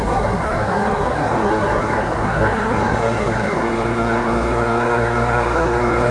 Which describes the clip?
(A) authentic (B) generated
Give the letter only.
B